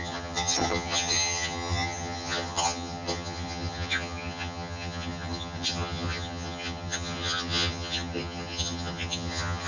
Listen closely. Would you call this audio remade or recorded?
remade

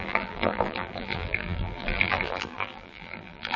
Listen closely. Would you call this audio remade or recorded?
remade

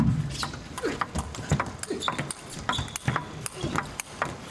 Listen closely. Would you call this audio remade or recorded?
recorded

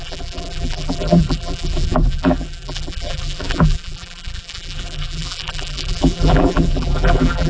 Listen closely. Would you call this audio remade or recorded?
remade